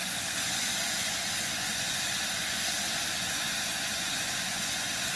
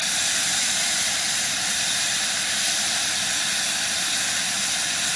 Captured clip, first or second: second